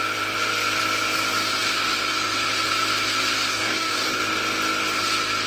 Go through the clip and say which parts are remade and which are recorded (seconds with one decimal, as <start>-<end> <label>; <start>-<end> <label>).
0.0-3.5 recorded; 3.5-4.2 remade; 4.2-5.5 recorded